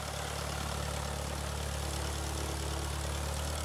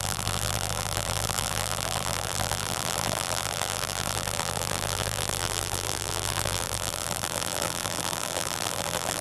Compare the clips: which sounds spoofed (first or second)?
second